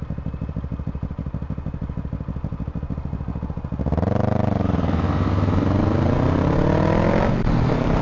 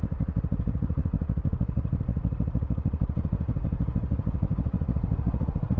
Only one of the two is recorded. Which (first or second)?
first